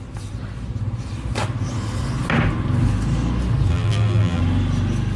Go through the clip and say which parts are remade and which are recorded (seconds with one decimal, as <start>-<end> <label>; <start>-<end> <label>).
0.0-3.7 recorded; 3.7-4.4 remade; 4.4-5.2 recorded